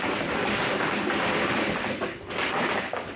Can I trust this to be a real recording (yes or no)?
yes